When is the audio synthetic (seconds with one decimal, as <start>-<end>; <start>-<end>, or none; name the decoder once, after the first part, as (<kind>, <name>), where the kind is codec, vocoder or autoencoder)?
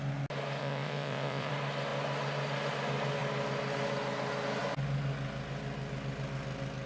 0.6-1.5 (vocoder, Vocos)